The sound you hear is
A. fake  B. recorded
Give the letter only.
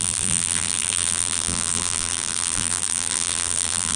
A